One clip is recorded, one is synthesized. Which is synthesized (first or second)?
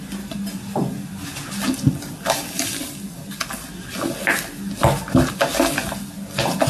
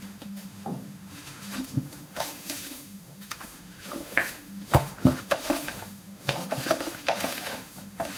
second